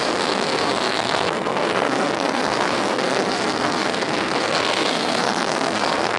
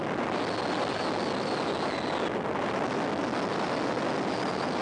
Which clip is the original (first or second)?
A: second